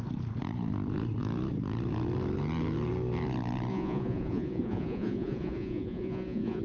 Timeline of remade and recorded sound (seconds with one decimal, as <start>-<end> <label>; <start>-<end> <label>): 0.0-3.7 recorded; 3.7-6.6 remade